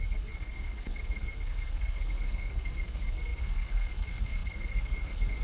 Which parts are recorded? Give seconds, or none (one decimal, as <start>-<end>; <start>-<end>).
none